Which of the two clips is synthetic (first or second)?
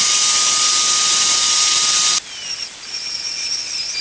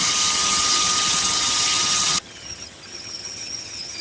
second